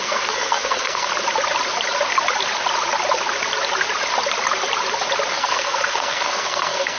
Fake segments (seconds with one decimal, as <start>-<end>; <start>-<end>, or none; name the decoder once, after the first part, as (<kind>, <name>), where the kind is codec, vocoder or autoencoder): 0.0-1.1 (codec, SNAC); 5.3-7.0